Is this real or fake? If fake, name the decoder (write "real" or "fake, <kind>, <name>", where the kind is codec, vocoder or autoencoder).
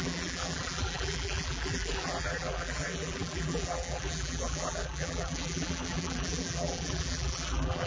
fake, vocoder, BigVGAN v2